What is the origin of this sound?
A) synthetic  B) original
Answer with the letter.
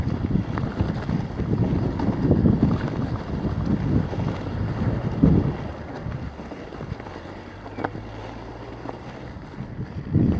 B